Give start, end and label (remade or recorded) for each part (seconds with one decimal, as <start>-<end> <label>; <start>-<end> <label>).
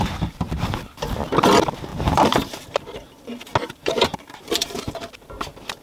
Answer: 0.0-1.9 recorded; 1.9-2.6 remade; 2.6-3.8 recorded; 3.8-4.9 remade; 4.9-5.8 recorded